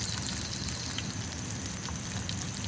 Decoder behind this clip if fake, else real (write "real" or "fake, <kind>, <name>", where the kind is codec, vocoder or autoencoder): real